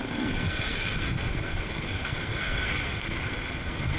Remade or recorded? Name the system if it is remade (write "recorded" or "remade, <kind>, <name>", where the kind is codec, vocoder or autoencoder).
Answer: remade, codec, SNAC